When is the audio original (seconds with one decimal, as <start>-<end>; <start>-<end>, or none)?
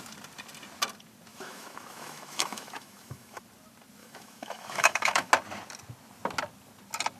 0.0-1.3; 3.4-4.0; 5.3-7.2